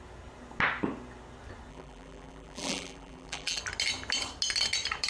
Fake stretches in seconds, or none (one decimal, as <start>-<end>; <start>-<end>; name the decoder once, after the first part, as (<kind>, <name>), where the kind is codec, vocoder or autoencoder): 1.7-3.6 (vocoder, BigVGAN v2)